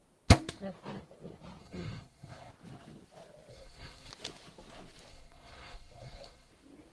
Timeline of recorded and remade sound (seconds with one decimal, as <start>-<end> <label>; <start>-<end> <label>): 0.0-1.6 recorded; 1.6-2.5 remade; 2.5-3.5 recorded; 3.5-4.1 remade; 4.1-5.1 recorded; 5.1-6.5 remade; 6.5-6.9 recorded